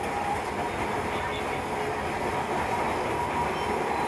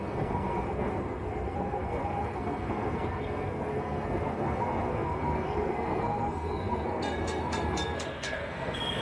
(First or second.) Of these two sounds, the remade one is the second